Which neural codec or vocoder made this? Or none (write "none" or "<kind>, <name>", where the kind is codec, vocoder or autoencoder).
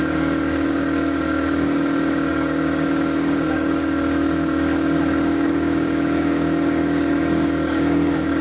codec, DAC